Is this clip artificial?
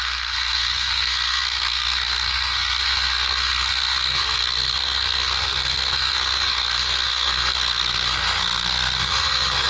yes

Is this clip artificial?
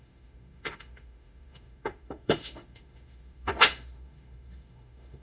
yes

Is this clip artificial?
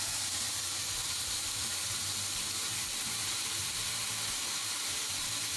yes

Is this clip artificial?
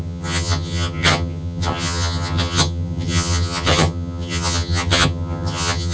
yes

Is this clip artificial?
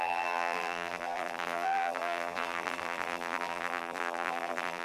yes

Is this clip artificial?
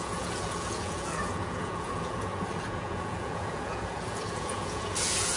yes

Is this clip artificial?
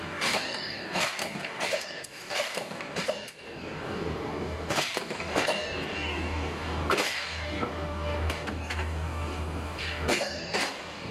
yes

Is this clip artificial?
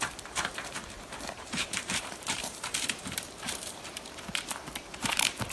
yes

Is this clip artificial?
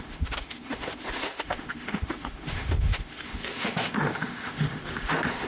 yes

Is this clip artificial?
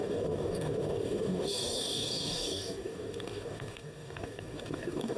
yes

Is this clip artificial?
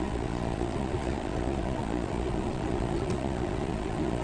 yes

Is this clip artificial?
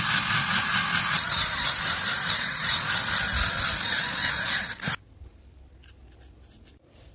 no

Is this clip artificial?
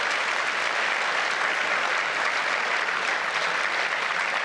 no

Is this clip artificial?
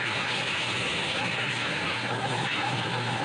yes